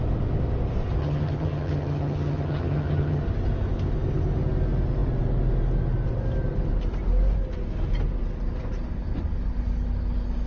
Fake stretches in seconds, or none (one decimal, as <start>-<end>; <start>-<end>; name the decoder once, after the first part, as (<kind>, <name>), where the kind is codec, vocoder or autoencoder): 1.0-3.2 (vocoder, HiFi-GAN)